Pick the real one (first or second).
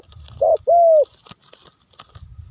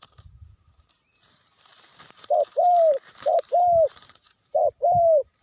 first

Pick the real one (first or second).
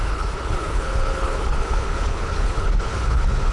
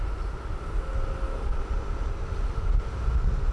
second